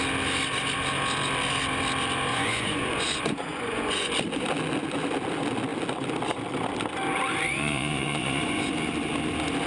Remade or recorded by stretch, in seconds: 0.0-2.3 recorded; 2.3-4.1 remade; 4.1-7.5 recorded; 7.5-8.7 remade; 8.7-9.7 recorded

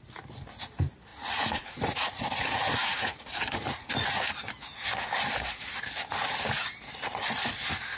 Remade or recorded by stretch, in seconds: 0.0-1.1 recorded; 1.1-4.3 remade; 4.3-8.0 recorded

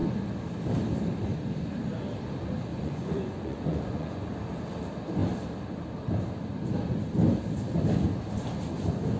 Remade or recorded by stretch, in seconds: 0.0-2.7 recorded; 2.7-4.3 remade; 4.3-9.2 recorded

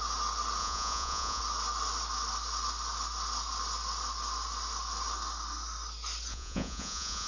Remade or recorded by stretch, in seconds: 0.0-0.6 recorded; 0.6-1.4 remade; 1.4-6.3 recorded; 6.3-7.3 remade

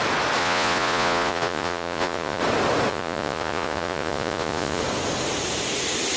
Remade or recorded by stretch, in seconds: 0.0-0.4 recorded; 0.4-2.4 remade; 2.4-2.9 recorded; 2.9-4.8 remade; 4.8-6.2 recorded